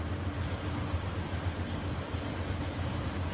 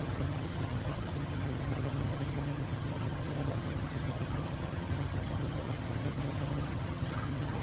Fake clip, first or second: second